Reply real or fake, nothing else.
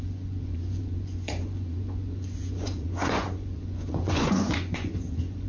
fake